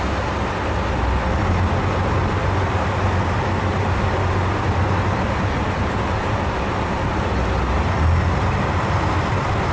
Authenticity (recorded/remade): recorded